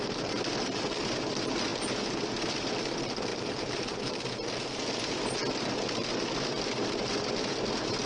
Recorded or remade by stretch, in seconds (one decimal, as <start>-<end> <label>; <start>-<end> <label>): 0.0-3.3 recorded; 3.3-4.1 remade; 4.1-8.1 recorded